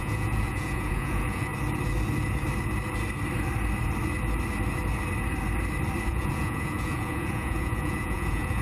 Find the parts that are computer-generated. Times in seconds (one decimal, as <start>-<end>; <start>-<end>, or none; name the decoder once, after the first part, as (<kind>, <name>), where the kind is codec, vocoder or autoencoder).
0.0-1.5 (vocoder, Vocos); 6.1-8.6